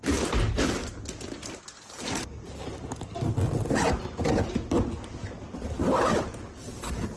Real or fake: real